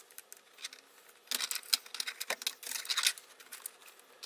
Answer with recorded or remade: recorded